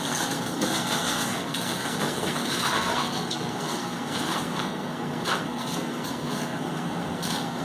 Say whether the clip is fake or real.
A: fake